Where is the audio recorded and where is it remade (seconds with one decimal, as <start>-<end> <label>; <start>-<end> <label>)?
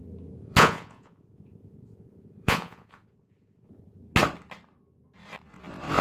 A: 0.0-0.4 recorded; 0.4-4.0 remade; 4.0-6.0 recorded